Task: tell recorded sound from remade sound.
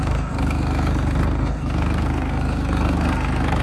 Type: remade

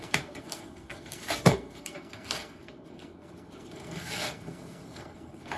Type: remade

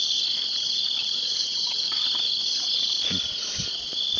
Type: recorded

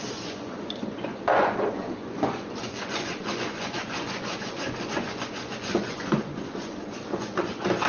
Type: remade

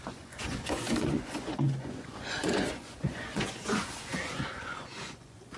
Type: remade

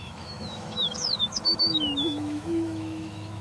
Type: remade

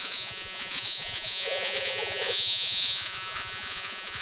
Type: remade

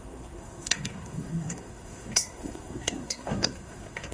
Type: remade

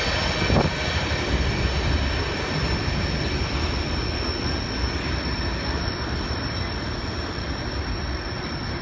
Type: recorded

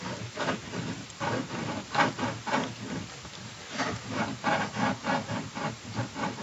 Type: recorded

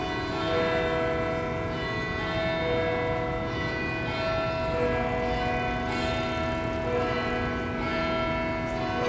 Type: recorded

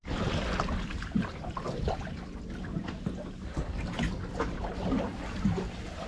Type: recorded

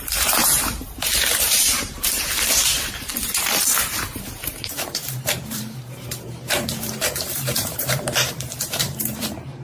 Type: remade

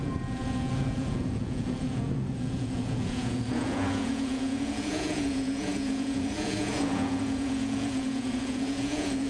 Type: remade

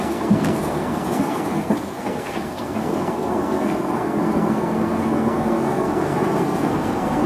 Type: remade